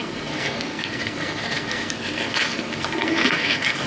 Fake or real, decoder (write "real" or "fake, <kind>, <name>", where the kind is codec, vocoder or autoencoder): fake, codec, SNAC